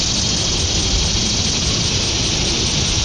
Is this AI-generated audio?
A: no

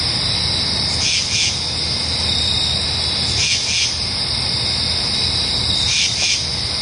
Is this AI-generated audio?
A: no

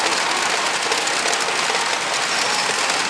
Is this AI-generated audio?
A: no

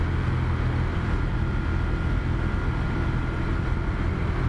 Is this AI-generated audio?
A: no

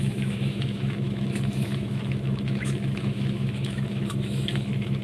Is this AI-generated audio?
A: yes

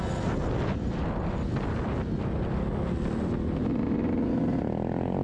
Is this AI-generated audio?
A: no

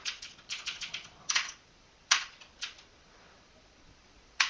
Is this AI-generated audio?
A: yes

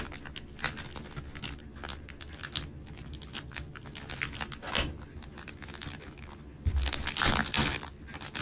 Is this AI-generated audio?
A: no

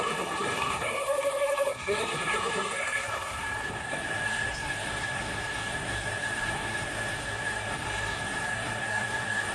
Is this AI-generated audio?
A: yes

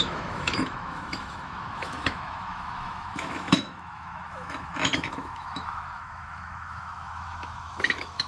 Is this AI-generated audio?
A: yes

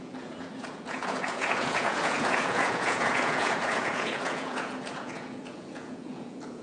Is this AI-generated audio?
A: yes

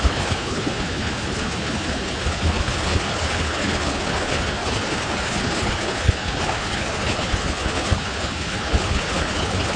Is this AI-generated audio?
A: yes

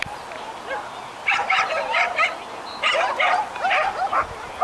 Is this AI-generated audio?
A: no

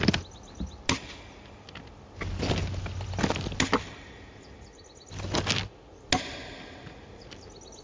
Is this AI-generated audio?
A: no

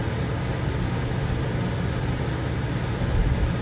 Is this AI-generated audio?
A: no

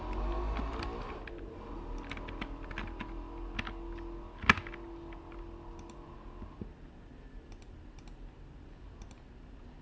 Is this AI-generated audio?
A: no